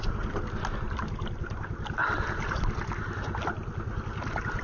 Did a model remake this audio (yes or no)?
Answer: no